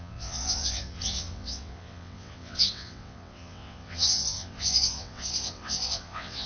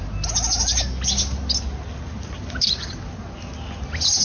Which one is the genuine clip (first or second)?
second